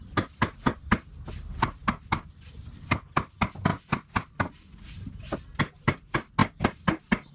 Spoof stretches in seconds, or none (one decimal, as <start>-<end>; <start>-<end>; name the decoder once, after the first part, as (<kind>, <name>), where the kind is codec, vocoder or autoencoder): none